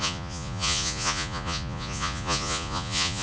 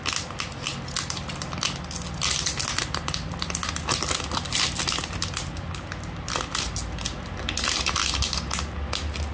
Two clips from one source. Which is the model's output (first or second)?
first